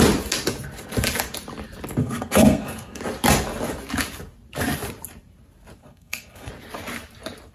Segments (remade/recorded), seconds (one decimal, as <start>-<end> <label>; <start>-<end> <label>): 0.0-2.0 recorded; 2.0-3.0 remade; 3.0-5.8 recorded; 5.8-6.5 remade; 6.5-7.5 recorded